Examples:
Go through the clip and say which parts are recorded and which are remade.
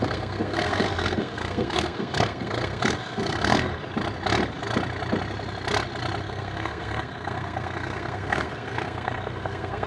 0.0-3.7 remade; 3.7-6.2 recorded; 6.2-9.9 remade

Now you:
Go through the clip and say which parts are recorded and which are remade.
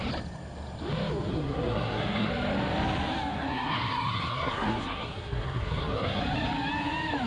0.0-1.3 recorded; 1.3-2.3 remade; 2.3-3.3 recorded; 3.3-6.2 remade; 6.2-7.3 recorded